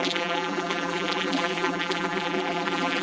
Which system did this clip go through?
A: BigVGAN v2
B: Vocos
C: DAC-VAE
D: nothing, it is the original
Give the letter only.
A